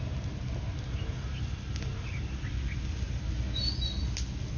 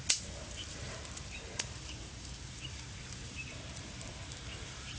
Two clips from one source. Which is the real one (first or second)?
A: first